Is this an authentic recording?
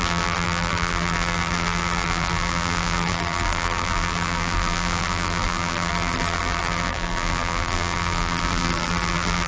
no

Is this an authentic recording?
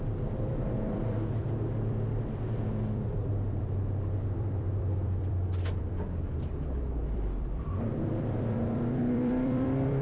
no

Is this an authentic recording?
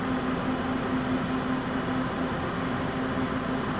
yes